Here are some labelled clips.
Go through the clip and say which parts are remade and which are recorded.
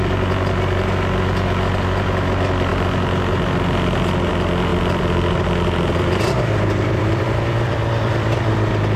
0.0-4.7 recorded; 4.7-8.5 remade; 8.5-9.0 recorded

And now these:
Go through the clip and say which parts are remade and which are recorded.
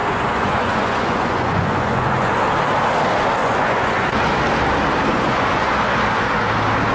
0.0-2.3 remade; 2.3-3.4 recorded; 3.4-4.3 remade; 4.3-5.1 recorded; 5.1-5.7 remade; 5.7-6.9 recorded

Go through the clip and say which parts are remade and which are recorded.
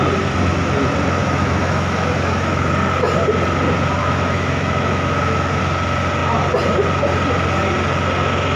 0.0-1.2 recorded; 1.2-2.7 remade; 2.7-4.0 recorded; 4.0-5.6 remade; 5.6-8.6 recorded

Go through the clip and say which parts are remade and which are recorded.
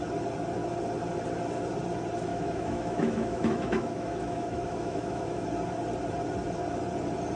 0.0-2.3 recorded; 2.3-5.5 remade; 5.5-7.4 recorded